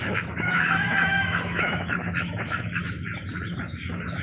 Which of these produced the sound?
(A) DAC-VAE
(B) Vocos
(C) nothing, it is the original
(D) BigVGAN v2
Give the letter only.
A